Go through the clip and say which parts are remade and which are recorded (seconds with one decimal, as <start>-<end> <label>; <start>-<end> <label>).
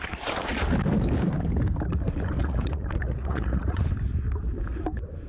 0.0-2.4 recorded; 2.4-3.8 remade; 3.8-5.3 recorded